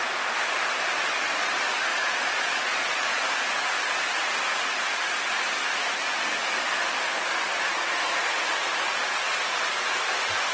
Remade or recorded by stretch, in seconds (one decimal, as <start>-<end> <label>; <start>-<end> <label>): 0.0-1.9 recorded; 1.9-3.1 remade; 3.1-10.5 recorded